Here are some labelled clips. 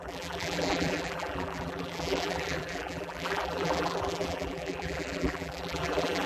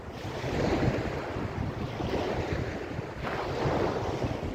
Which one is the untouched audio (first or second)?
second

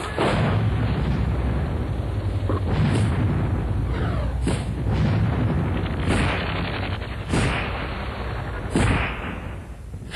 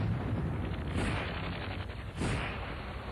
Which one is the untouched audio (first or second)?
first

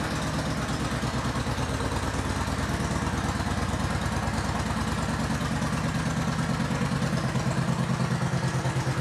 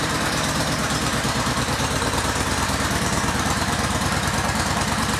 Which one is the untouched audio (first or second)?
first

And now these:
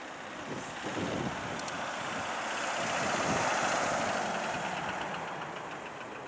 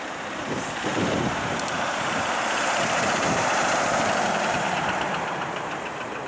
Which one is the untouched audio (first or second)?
first